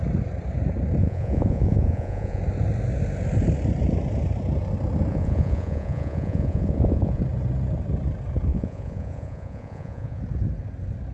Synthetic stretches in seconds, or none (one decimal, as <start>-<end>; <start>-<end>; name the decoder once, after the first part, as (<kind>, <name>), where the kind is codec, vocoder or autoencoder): 1.0-2.4 (vocoder, Vocos); 5.1-7.2; 8.5-10.2